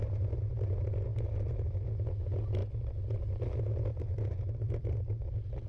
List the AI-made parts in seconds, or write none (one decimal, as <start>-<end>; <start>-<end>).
0.0-1.1; 1.6-2.6; 4.0-5.7